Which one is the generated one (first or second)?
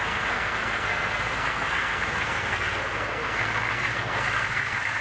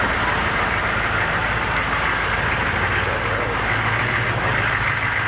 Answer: first